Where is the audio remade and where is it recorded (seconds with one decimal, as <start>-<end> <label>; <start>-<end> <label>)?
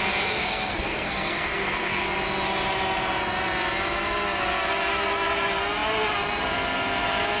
0.0-0.4 recorded; 0.4-2.0 remade; 2.0-7.4 recorded